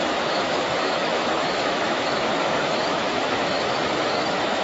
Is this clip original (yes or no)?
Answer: no